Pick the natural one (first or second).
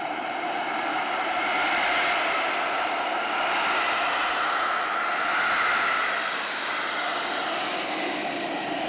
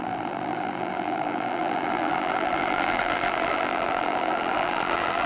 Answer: first